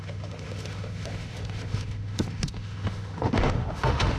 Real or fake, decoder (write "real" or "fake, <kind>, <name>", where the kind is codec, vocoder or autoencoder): fake, autoencoder, DAC-VAE